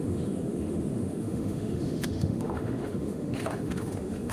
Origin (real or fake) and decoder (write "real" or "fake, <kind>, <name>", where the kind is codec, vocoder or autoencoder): fake, autoencoder, DAC-VAE